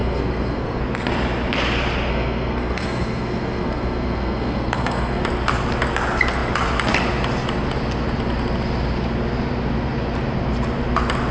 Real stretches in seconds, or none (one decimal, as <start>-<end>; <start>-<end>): 0.8-2.1; 5.2-11.3